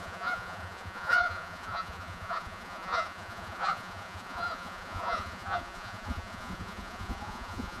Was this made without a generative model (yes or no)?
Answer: no